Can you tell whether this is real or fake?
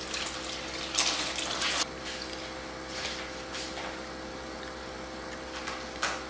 real